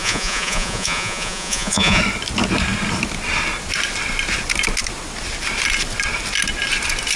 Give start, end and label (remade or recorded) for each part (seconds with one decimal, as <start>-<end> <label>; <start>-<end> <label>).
0.0-2.0 remade; 2.0-7.2 recorded